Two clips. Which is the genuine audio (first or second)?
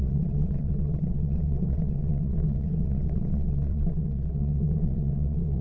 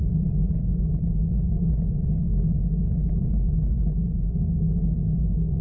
second